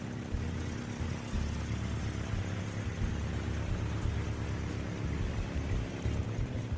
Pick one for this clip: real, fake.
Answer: real